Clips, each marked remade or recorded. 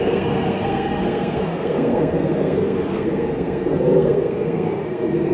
remade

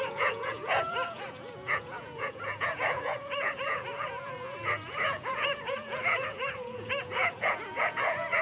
remade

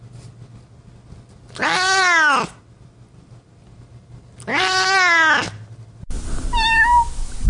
recorded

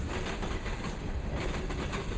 recorded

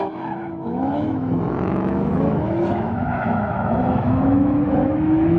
remade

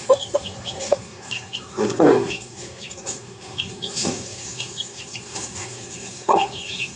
remade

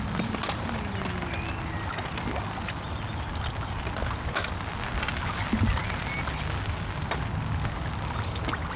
recorded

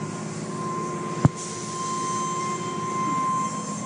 recorded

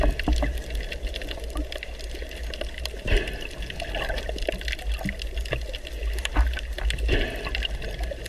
recorded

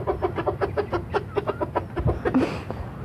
recorded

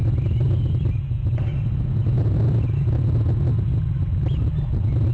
recorded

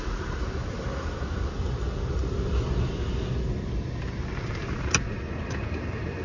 recorded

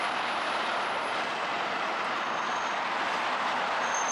recorded